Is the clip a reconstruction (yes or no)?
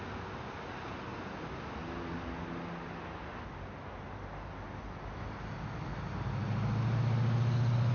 no